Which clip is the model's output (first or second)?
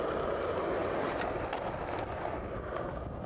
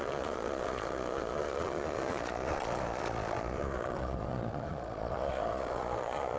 second